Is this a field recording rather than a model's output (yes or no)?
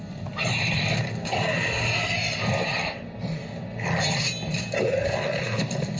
yes